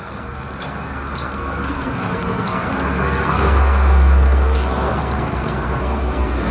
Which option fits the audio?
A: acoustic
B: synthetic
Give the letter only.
B